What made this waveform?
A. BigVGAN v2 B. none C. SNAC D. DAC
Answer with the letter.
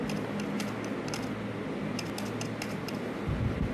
B